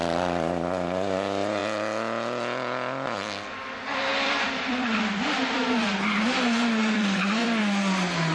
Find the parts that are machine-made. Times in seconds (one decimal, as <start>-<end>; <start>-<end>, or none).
4.1-5.9; 6.8-7.6